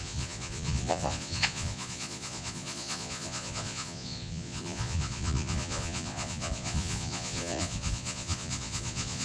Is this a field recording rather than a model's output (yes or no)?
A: no